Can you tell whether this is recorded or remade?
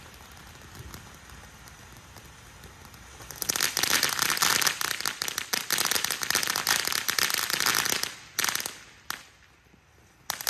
recorded